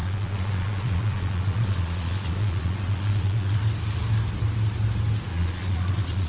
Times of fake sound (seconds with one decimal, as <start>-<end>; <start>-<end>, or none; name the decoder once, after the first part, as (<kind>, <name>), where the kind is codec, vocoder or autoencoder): 0.0-3.6 (vocoder, Vocos); 5.3-6.3